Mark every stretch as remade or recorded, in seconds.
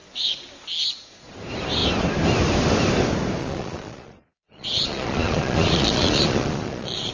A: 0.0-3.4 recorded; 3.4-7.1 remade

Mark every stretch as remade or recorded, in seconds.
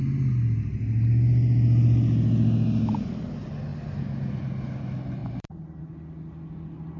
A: 0.0-5.2 recorded; 5.2-5.8 remade; 5.8-7.0 recorded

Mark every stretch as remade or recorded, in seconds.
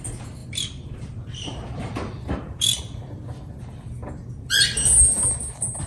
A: 0.0-0.4 recorded; 0.4-3.6 remade; 3.6-5.9 recorded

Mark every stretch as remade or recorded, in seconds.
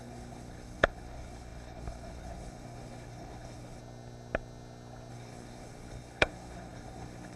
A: 0.0-3.8 remade; 3.8-5.1 recorded; 5.1-7.4 remade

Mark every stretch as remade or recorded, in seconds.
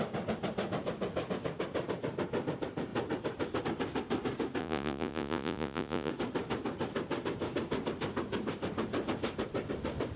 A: 0.0-4.6 recorded; 4.6-6.1 remade; 6.1-10.2 recorded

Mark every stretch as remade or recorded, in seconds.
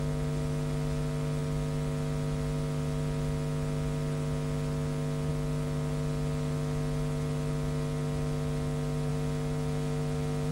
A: 0.0-10.5 recorded